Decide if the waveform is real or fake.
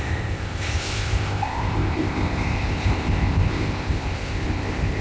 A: fake